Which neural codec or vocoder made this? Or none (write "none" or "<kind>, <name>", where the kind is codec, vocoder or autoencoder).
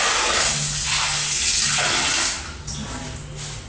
none